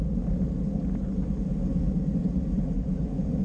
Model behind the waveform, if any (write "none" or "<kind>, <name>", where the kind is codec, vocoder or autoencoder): none